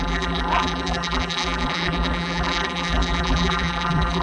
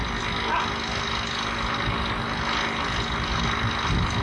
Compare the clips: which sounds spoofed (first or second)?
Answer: first